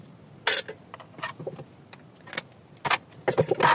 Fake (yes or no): no